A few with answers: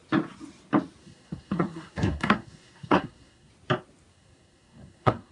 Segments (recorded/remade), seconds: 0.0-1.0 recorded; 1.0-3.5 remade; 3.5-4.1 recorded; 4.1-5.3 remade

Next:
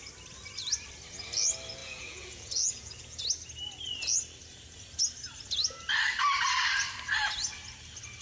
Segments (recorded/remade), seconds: 0.0-1.8 recorded; 1.8-3.2 remade; 3.2-8.2 recorded

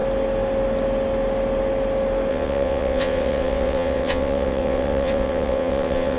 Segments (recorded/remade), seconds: 0.0-2.3 recorded; 2.3-6.2 remade

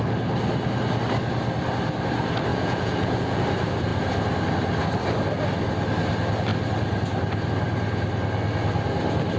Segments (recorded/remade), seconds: 0.0-2.5 recorded; 2.5-3.4 remade; 3.4-9.4 recorded

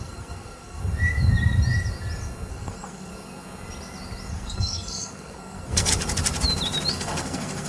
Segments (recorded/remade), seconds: 0.0-0.8 remade; 0.8-2.5 recorded; 2.5-3.1 remade; 3.1-4.3 recorded; 4.3-5.9 remade; 5.9-6.9 recorded; 6.9-7.7 remade

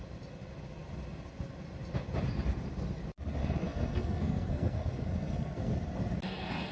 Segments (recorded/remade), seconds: 0.0-3.4 recorded; 3.4-5.7 remade; 5.7-6.7 recorded